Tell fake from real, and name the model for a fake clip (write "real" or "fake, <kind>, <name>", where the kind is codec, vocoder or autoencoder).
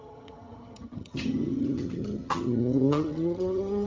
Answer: fake, vocoder, HiFi-GAN